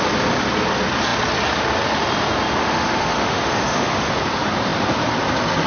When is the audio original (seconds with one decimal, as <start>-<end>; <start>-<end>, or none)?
0.0-2.6; 4.1-5.7